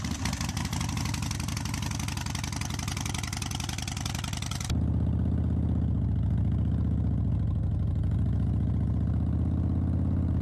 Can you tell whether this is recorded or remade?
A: recorded